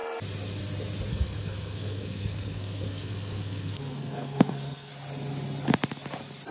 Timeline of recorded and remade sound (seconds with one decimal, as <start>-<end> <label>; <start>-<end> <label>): 0.0-1.1 recorded; 1.1-4.9 remade; 4.9-6.5 recorded